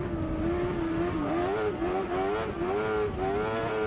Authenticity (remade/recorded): recorded